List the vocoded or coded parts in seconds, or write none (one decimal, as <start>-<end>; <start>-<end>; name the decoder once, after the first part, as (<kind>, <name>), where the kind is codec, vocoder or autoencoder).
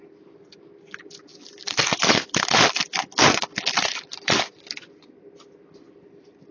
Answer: none